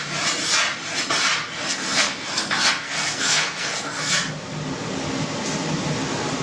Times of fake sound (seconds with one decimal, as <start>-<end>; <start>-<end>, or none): 1.7-4.1